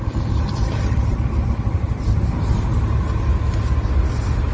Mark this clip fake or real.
real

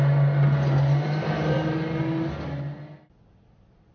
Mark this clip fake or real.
real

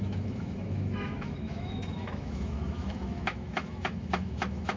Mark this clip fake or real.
fake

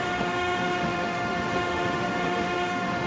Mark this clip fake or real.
fake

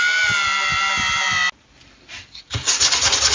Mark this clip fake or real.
real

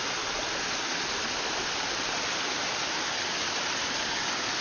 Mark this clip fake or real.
real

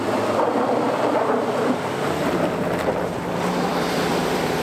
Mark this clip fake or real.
fake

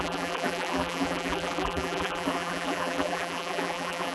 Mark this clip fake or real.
fake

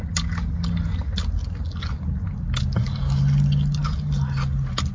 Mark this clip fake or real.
real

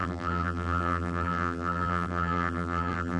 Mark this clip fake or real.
fake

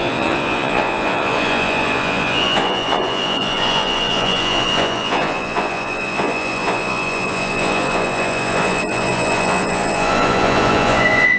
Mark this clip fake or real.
fake